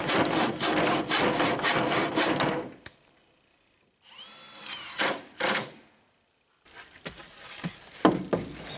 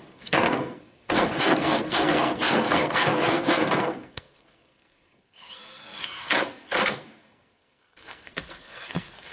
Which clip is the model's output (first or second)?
second